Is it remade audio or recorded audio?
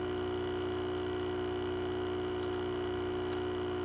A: recorded